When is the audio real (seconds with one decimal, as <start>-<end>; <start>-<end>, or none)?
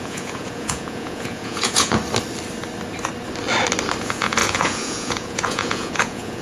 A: 2.0-4.0